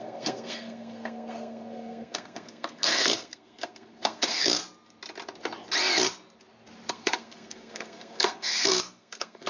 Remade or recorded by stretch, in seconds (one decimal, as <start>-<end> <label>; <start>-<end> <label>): 0.0-4.6 remade; 4.6-6.9 recorded; 6.9-9.5 remade